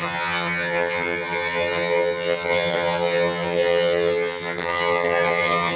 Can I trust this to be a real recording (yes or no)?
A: no